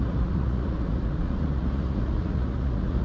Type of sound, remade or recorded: remade